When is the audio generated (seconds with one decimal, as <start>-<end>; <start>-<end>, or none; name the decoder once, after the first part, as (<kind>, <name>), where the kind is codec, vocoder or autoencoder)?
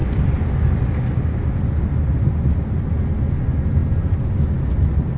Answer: none